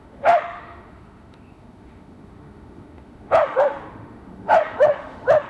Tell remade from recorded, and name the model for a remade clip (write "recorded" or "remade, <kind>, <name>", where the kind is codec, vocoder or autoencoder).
remade, autoencoder, DAC-VAE